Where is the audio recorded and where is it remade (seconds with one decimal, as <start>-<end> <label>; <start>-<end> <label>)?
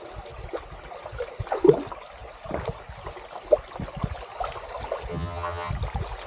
0.0-5.1 recorded; 5.1-5.7 remade; 5.7-6.3 recorded